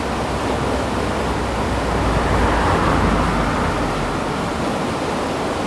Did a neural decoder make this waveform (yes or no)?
no